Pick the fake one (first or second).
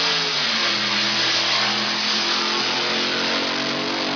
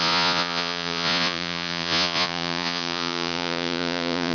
second